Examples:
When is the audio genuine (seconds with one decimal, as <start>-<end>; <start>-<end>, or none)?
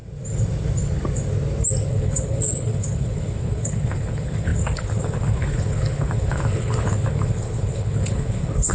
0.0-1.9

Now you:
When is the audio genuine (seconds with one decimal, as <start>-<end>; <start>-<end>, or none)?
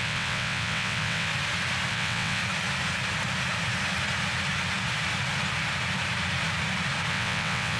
1.3-1.9; 2.4-7.1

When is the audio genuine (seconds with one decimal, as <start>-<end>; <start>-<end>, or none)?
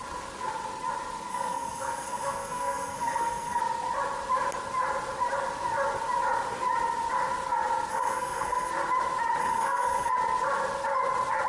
0.0-1.3; 3.6-7.9; 8.7-9.4; 10.1-11.5